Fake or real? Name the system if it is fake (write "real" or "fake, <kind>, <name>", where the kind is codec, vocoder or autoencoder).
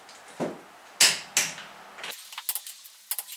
real